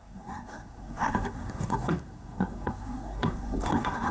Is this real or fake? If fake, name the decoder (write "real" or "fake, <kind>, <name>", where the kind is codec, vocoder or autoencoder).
fake, codec, SNAC